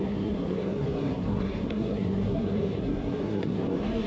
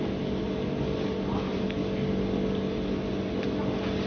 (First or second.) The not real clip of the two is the first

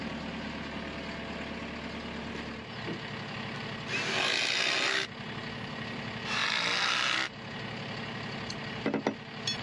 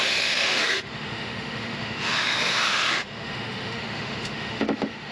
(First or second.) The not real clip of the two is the second